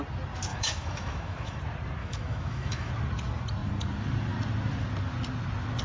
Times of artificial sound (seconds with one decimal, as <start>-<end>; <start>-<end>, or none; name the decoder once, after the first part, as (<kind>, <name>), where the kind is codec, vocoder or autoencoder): 0.5-1.6 (autoencoder, DAC-VAE); 2.0-2.9